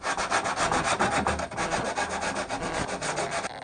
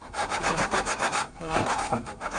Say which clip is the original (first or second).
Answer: first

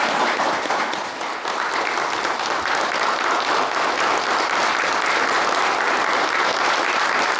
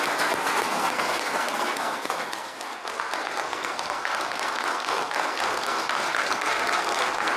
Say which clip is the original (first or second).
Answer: first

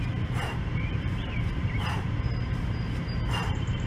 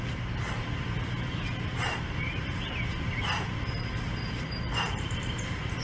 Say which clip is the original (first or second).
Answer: second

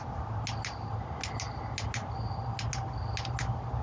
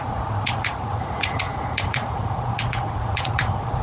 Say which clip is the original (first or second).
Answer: first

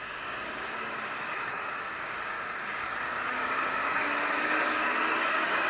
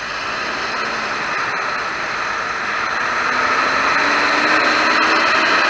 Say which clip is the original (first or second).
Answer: second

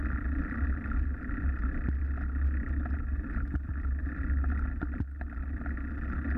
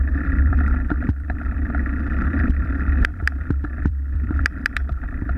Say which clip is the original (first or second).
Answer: first